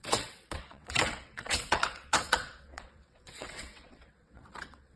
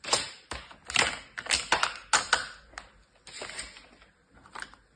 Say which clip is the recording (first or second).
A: second